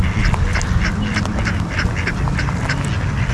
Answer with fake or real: real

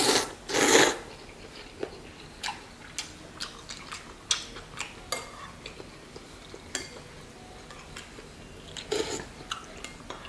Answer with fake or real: real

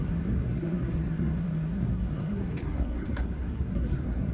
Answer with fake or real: fake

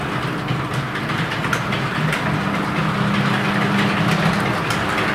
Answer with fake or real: real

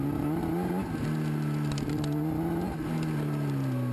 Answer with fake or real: real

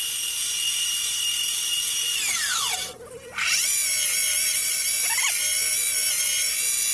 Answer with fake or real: real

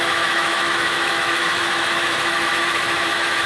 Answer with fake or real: fake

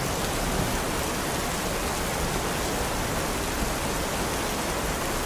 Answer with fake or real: real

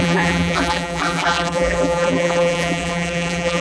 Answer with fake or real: fake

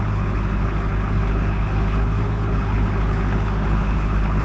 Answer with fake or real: fake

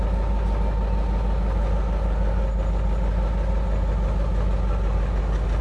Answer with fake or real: real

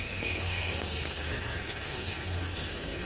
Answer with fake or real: fake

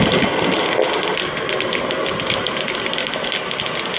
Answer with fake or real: real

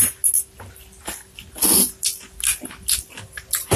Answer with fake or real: real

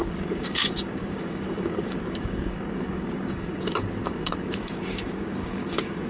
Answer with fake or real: fake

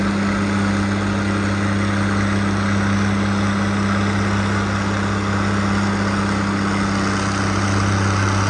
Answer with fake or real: real